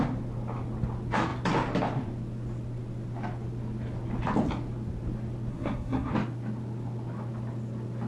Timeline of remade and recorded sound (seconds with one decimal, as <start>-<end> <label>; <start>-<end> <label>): 0.0-5.5 recorded; 5.5-6.1 remade; 6.1-8.1 recorded